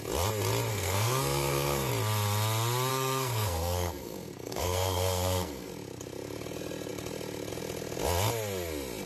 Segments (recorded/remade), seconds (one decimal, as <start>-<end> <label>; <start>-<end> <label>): 0.0-0.7 recorded; 0.7-1.9 remade; 1.9-2.9 recorded; 2.9-5.7 remade; 5.7-9.1 recorded